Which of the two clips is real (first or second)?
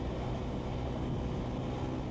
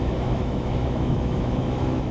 first